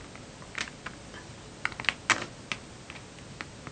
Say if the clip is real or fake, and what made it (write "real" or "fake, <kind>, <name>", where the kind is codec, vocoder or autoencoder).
real